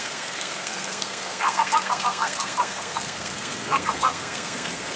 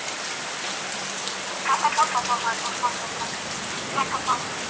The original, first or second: second